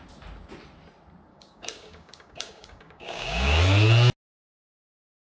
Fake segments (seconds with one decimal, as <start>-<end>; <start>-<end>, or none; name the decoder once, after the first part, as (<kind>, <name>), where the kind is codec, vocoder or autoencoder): 1.3-3.6 (codec, DAC)